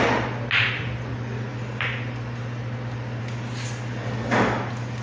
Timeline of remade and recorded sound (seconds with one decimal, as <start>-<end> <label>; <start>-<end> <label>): 0.0-5.0 recorded